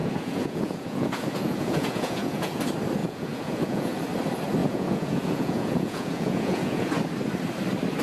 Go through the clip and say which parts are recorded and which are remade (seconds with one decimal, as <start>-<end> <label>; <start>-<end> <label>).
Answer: 0.0-2.6 remade; 2.6-3.0 recorded; 3.0-4.0 remade; 4.0-4.6 recorded; 4.6-6.9 remade; 6.9-8.0 recorded